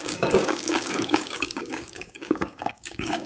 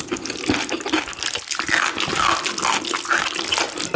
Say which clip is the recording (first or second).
second